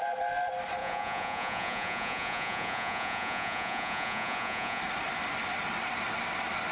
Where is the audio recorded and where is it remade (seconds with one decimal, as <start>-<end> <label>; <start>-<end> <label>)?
0.0-0.8 recorded; 0.8-4.8 remade; 4.8-6.7 recorded